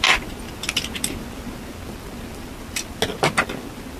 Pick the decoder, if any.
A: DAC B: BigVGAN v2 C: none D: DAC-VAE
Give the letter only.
C